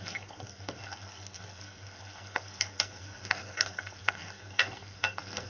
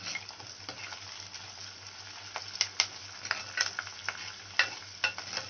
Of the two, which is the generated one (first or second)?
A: first